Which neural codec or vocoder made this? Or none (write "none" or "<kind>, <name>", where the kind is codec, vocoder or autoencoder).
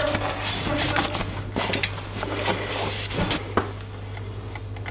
none